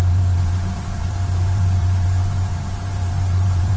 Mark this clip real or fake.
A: fake